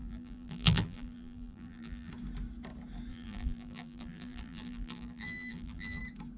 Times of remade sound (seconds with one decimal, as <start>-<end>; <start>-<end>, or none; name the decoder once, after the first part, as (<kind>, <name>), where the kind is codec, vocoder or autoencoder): 0.0-2.1 (vocoder, BigVGAN v2); 3.1-6.0